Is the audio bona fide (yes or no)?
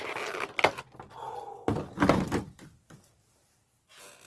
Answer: yes